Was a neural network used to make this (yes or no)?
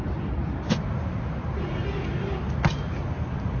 no